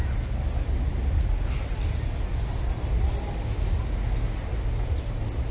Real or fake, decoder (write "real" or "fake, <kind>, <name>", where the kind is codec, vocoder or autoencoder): real